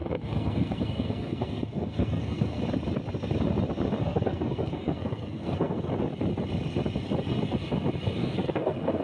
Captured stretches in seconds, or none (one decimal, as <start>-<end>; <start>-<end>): 2.6-4.0; 5.9-8.2